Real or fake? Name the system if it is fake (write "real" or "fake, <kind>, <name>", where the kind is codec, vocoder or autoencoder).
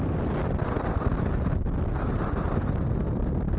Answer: real